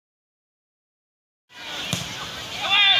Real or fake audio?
real